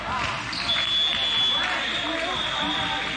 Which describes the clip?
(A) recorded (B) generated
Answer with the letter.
A